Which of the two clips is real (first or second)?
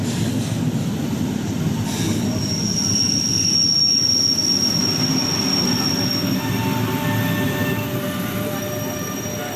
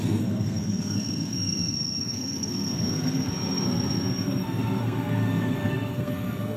first